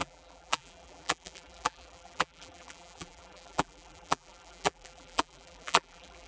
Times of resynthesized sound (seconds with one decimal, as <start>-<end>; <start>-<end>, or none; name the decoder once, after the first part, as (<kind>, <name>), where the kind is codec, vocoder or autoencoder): 0.0-6.3 (vocoder, BigVGAN v2)